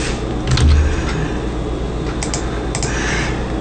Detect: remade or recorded recorded